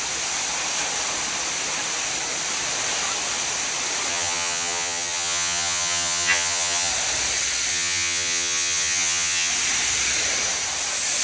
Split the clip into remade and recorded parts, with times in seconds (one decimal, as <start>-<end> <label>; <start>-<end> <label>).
0.0-4.1 recorded; 4.1-6.9 remade; 6.9-7.7 recorded; 7.7-9.5 remade; 9.5-11.2 recorded